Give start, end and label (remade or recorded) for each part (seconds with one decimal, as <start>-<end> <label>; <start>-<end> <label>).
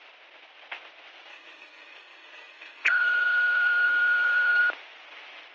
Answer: 0.0-1.3 recorded; 1.3-4.6 remade; 4.6-5.5 recorded